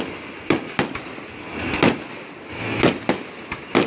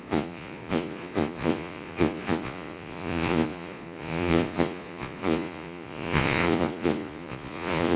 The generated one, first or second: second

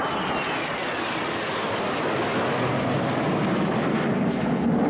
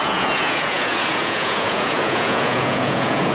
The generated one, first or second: second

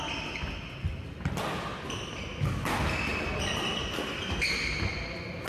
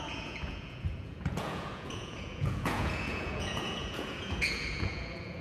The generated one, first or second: second